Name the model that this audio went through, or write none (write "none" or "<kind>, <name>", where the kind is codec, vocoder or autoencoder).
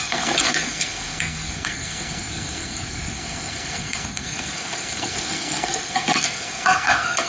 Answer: codec, SNAC